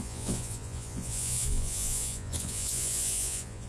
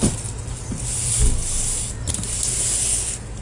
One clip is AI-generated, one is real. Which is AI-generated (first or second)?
first